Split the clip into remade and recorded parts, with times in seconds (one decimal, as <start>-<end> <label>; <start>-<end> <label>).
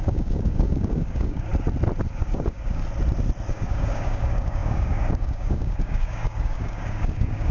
0.0-1.5 remade; 1.5-2.1 recorded; 2.1-2.8 remade; 2.8-3.5 recorded; 3.5-7.5 remade